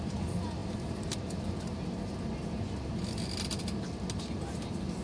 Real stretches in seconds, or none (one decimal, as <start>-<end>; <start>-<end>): 0.0-5.0